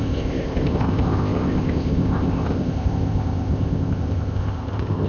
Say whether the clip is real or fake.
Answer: fake